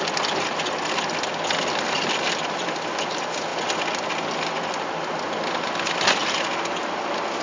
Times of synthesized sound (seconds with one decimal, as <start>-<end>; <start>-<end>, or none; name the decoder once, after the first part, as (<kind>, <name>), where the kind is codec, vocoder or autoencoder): none